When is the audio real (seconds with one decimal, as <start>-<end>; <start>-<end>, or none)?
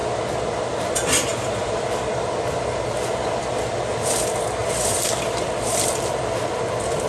0.0-1.3; 2.1-4.6; 6.4-7.1